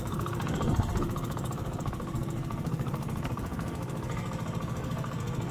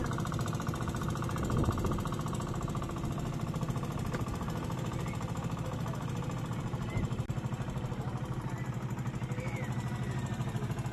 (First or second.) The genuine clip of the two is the second